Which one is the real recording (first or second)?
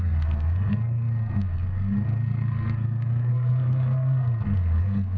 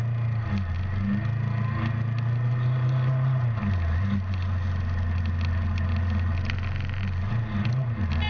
second